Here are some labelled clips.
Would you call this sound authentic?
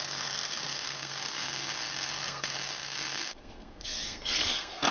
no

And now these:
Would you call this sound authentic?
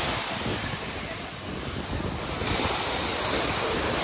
yes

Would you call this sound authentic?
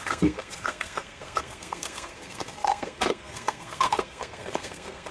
no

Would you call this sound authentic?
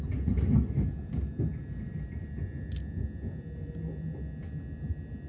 yes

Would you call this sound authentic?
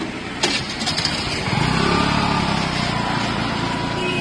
yes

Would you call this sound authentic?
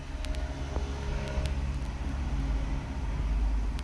yes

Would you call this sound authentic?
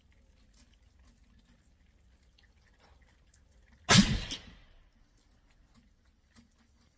yes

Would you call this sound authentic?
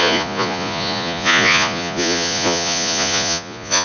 no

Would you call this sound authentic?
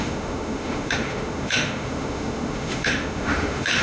no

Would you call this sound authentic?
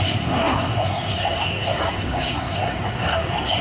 no